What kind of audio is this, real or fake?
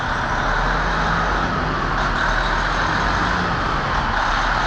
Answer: real